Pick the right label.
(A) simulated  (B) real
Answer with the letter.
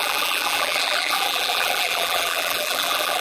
A